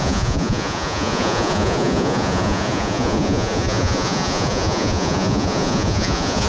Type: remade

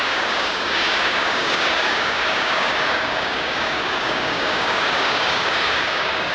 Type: remade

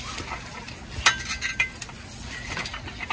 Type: recorded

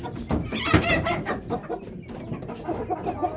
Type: recorded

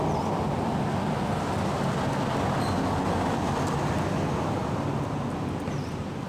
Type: recorded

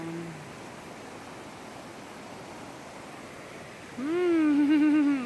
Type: recorded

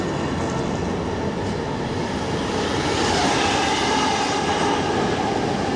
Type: recorded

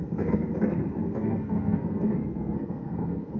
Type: remade